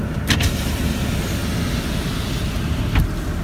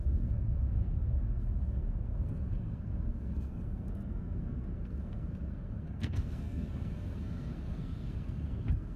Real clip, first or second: first